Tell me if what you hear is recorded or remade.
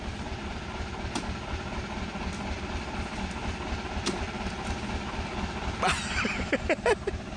recorded